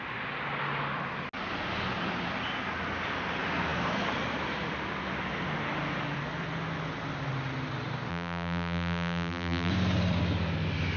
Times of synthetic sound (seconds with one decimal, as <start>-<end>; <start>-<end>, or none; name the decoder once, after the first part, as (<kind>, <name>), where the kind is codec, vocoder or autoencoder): 8.1-9.7 (vocoder, BigVGAN v2)